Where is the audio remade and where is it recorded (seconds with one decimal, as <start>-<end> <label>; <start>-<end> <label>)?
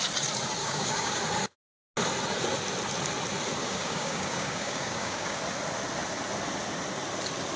0.0-0.6 recorded; 0.6-1.2 remade; 1.2-3.6 recorded; 3.6-5.4 remade; 5.4-7.6 recorded